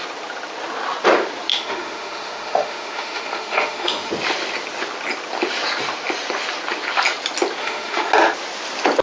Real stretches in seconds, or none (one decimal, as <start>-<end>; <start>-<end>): 0.0-1.5; 4.1-7.6; 8.1-9.0